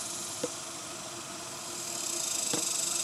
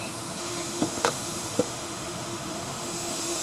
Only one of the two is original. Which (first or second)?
first